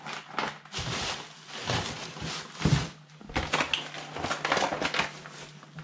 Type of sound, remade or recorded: recorded